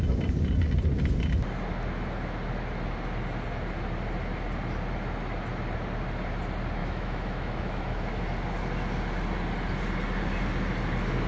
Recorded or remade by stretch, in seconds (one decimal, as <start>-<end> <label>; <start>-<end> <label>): 0.0-6.8 recorded; 6.8-8.2 remade; 8.2-11.3 recorded